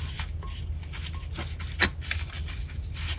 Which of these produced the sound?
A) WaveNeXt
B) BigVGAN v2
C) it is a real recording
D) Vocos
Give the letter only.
C